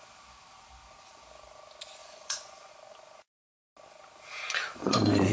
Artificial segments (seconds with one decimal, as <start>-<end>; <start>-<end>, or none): 2.0-2.7; 4.8-5.3